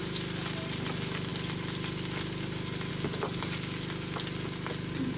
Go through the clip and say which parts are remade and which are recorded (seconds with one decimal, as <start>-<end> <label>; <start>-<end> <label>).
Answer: 0.0-5.2 recorded